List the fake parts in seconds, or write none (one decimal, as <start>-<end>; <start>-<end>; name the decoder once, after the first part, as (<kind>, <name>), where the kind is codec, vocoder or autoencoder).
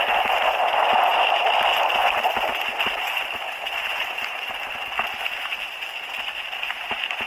none